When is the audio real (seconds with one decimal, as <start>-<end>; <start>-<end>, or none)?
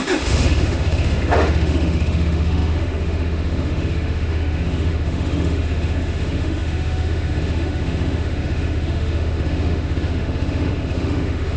none